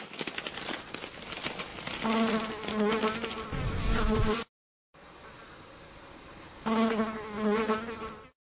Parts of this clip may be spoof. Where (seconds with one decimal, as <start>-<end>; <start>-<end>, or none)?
none